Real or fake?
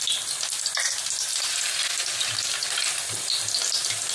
real